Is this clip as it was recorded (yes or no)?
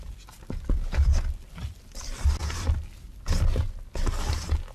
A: yes